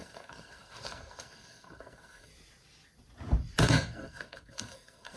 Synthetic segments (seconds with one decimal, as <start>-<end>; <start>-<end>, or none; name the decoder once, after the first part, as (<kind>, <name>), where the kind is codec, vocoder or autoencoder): 0.0-2.3 (codec, SNAC); 3.6-5.2